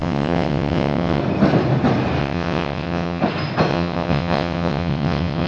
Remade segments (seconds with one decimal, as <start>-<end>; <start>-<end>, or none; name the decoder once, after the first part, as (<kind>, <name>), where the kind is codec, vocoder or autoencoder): 0.0-1.2 (vocoder, WaveNeXt); 2.2-3.2; 3.7-5.5